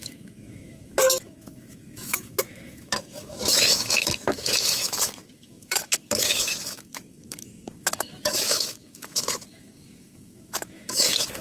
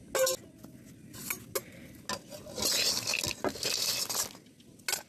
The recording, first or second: second